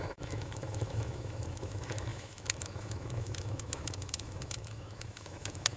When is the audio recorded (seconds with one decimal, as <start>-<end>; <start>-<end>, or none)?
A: none